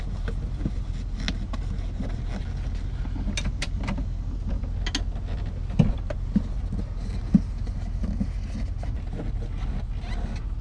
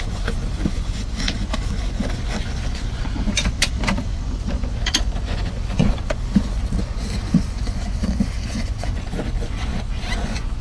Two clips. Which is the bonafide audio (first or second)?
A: first